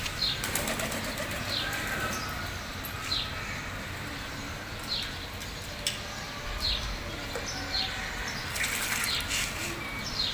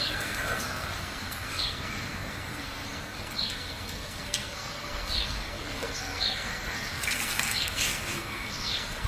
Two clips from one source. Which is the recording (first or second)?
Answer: first